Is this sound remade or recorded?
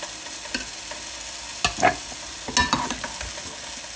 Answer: recorded